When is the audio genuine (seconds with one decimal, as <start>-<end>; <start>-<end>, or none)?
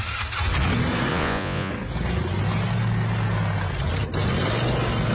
0.0-1.1; 1.7-5.1